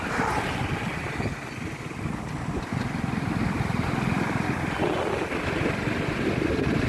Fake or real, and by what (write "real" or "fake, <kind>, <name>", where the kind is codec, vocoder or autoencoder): real